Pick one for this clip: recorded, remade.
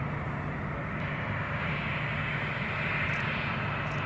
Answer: recorded